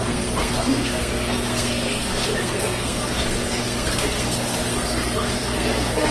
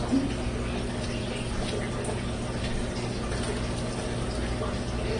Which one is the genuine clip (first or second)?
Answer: second